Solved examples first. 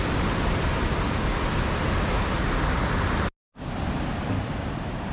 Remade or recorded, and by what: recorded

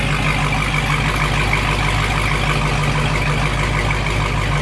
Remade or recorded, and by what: recorded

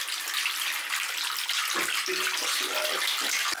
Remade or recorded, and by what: recorded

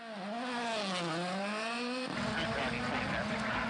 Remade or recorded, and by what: recorded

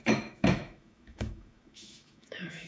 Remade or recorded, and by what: remade, autoencoder, DAC-VAE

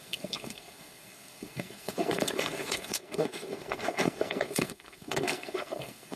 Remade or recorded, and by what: remade, codec, SNAC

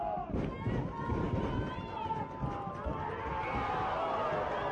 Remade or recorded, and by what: recorded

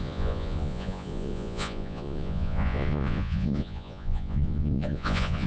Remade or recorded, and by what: remade, vocoder, Vocos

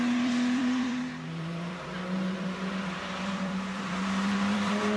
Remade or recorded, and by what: remade, vocoder, BigVGAN v2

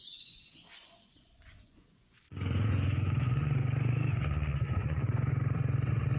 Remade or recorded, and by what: remade, vocoder, Vocos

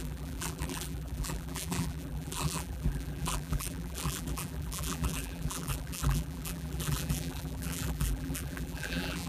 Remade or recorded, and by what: remade, vocoder, BigVGAN v2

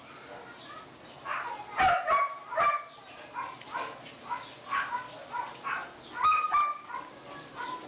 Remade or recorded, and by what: recorded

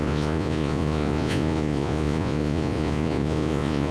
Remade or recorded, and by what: remade, vocoder, Vocos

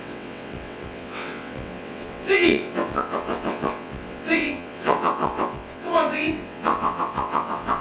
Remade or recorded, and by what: remade, vocoder, WaveNeXt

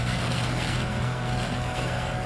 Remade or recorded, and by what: remade, codec, SNAC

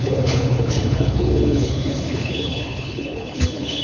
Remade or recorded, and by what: remade, codec, HILCodec